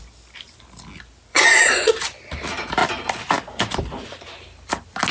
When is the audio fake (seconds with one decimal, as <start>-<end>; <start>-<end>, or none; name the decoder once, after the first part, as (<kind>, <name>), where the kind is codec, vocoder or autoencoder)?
1.3-1.9 (vocoder, Vocos)